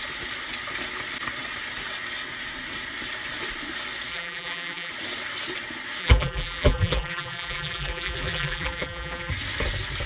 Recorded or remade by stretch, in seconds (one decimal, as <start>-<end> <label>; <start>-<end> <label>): 0.0-4.1 recorded; 4.1-4.9 remade; 4.9-6.0 recorded; 6.0-9.3 remade; 9.3-10.1 recorded

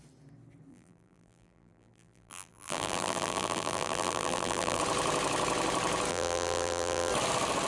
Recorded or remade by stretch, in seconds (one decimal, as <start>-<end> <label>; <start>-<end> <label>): 0.0-0.7 recorded; 0.7-4.8 remade; 4.8-6.1 recorded; 6.1-7.1 remade; 7.1-7.7 recorded